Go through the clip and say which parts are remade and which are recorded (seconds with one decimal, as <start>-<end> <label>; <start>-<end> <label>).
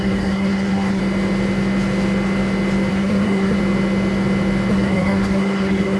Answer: 0.0-1.0 remade; 1.0-2.9 recorded; 2.9-3.6 remade; 3.6-4.7 recorded; 4.7-6.0 remade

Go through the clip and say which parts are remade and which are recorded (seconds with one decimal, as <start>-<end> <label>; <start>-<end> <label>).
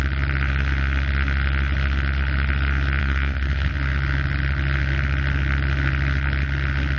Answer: 0.0-3.0 recorded; 3.0-3.7 remade; 3.7-7.0 recorded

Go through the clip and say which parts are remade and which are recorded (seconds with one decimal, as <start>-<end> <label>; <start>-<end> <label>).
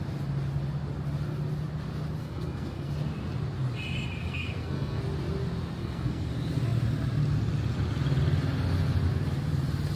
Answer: 0.0-2.2 recorded; 2.2-2.9 remade; 2.9-4.2 recorded; 4.2-5.0 remade; 5.0-5.8 recorded; 5.8-6.3 remade; 6.3-10.0 recorded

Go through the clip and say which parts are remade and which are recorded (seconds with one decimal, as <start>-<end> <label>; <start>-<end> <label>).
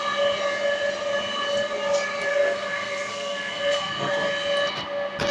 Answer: 0.0-2.3 recorded; 2.3-4.1 remade; 4.1-5.3 recorded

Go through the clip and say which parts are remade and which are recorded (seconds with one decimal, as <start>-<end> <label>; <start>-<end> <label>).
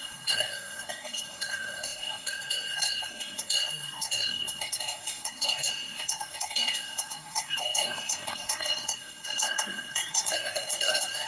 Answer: 0.0-11.3 remade